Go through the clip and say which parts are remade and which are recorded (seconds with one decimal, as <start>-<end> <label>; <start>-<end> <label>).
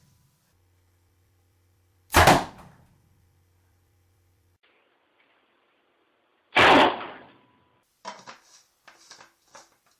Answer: 0.0-10.0 remade